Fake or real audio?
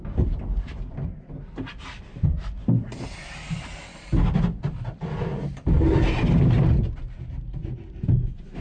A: real